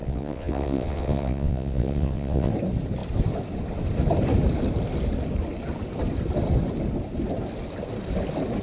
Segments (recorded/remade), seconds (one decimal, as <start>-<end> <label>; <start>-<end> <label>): 0.0-2.5 remade; 2.5-8.6 recorded